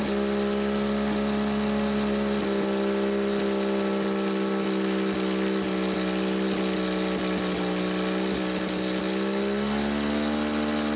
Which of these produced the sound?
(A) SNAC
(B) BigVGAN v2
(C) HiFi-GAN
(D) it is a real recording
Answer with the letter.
D